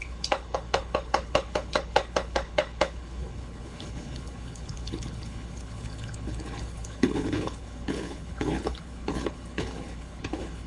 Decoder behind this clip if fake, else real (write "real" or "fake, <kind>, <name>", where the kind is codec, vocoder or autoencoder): fake, codec, HILCodec